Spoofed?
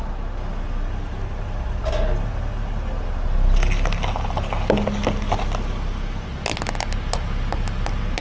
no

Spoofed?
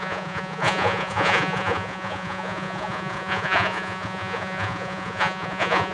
yes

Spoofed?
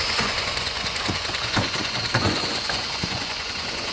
yes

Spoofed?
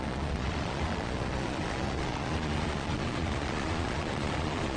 yes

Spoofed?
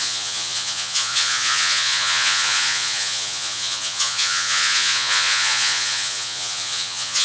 yes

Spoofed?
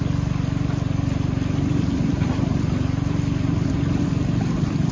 no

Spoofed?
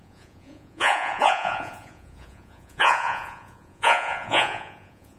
yes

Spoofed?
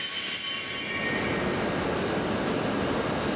no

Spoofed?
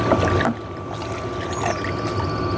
no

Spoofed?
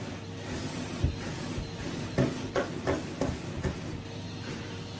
no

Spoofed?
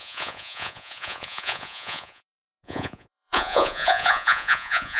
yes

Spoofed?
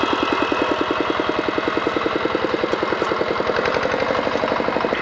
no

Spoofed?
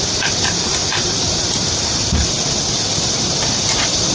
no